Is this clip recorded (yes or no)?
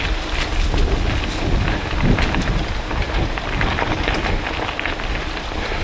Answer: yes